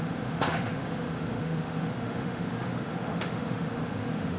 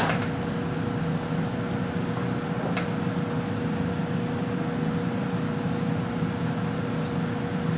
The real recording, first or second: second